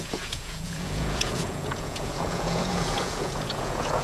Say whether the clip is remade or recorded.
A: remade